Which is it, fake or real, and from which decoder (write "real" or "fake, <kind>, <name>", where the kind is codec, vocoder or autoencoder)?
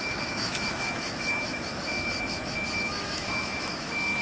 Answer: fake, autoencoder, DAC-VAE